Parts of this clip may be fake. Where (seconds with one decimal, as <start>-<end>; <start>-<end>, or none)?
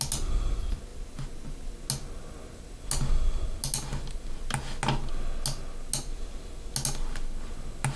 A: none